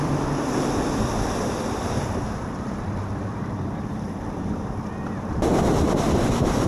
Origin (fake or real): fake